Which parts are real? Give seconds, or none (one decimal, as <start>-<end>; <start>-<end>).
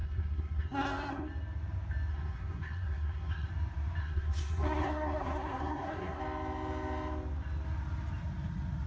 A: 1.3-2.1; 3.5-4.0; 6.2-8.9